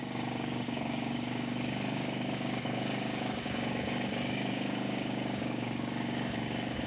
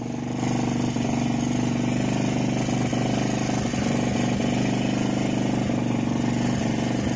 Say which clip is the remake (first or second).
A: first